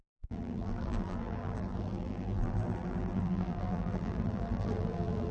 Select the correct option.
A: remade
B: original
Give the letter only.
A